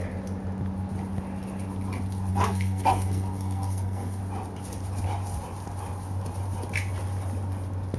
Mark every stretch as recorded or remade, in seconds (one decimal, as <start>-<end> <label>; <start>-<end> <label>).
0.0-2.3 recorded; 2.3-4.2 remade; 4.2-8.0 recorded